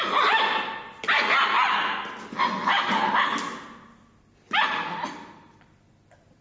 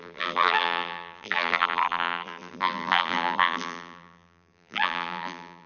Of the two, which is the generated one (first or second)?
second